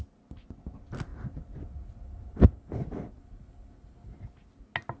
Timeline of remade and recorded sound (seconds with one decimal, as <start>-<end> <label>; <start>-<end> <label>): 0.0-5.0 recorded